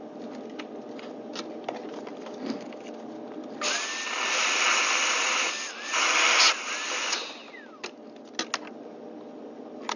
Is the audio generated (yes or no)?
no